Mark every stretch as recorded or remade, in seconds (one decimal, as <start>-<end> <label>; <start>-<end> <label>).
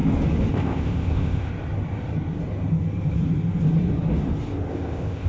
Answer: 0.0-0.5 recorded; 0.5-1.5 remade; 1.5-4.7 recorded; 4.7-5.3 remade